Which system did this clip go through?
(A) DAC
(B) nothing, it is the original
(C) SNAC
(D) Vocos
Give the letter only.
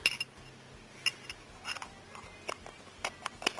B